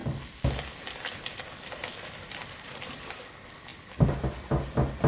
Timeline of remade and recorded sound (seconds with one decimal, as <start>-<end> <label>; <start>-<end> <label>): 0.0-5.1 recorded